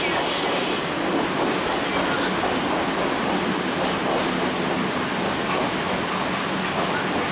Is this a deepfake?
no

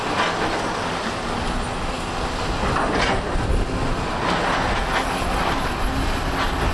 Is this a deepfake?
no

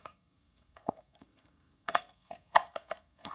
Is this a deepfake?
yes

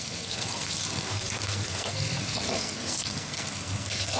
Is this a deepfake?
yes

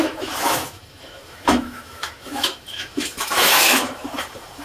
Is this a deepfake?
yes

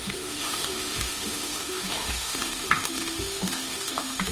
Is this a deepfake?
yes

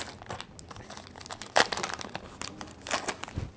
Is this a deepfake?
no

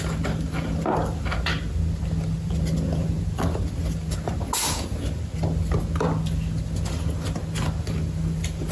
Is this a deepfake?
no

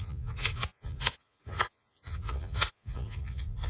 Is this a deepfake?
yes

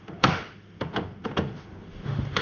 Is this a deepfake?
yes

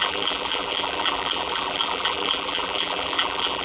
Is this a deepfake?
yes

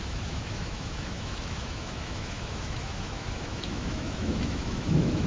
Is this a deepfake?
yes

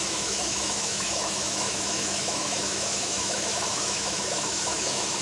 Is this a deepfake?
yes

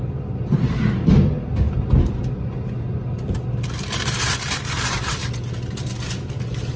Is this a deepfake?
no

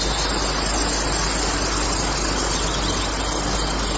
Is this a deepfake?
no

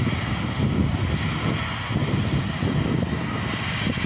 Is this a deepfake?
no